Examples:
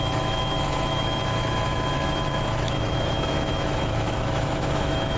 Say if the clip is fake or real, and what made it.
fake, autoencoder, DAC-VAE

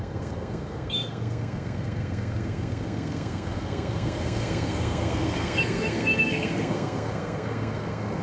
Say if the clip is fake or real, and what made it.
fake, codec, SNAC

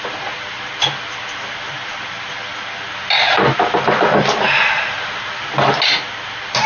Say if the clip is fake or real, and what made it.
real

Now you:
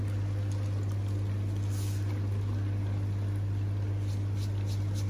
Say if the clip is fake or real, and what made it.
real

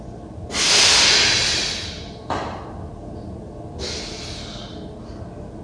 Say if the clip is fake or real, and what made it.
real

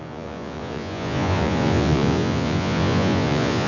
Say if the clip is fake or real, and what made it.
fake, vocoder, Vocos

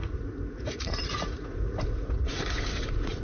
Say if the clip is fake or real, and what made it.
fake, vocoder, Vocos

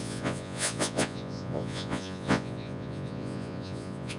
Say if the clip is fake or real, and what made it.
fake, vocoder, Vocos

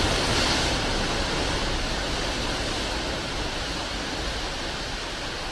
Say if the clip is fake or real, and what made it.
real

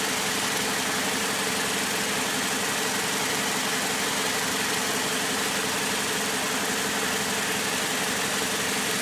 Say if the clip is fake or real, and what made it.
real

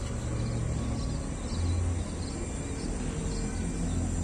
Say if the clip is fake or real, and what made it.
real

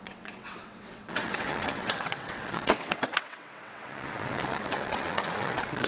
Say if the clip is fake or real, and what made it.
fake, vocoder, WaveNeXt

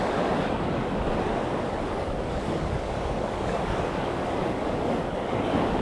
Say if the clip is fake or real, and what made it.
fake, codec, DAC